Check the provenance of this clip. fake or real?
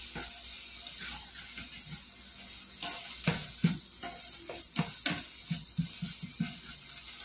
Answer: real